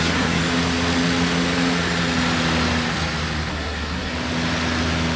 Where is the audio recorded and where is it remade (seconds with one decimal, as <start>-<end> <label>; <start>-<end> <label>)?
0.0-0.4 remade; 0.4-3.5 recorded; 3.5-4.1 remade; 4.1-5.2 recorded